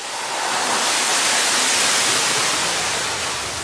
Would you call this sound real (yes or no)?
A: yes